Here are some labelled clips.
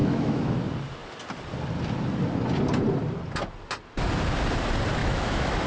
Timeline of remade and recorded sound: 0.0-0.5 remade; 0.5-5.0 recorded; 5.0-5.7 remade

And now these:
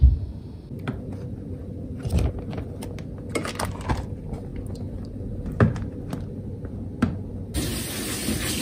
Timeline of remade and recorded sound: 0.0-8.6 recorded

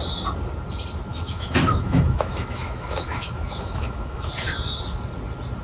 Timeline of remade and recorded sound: 0.0-1.1 recorded; 1.1-4.3 remade; 4.3-5.6 recorded

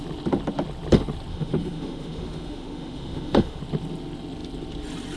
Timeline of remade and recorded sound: 0.0-1.3 recorded; 1.3-3.6 remade; 3.6-5.2 recorded

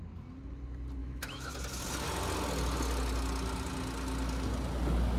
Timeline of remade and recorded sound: 0.0-1.0 recorded; 1.0-1.5 remade; 1.5-5.2 recorded

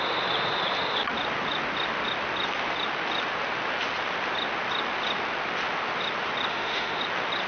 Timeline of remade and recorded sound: 0.0-6.5 recorded; 6.5-7.0 remade; 7.0-7.5 recorded

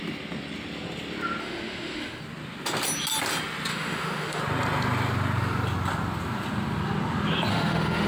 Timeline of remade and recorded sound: 0.0-1.4 recorded; 1.4-2.2 remade; 2.2-3.7 recorded; 3.7-4.4 remade; 4.4-7.5 recorded; 7.5-8.1 remade